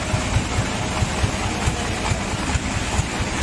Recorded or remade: recorded